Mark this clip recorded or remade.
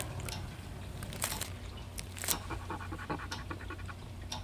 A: recorded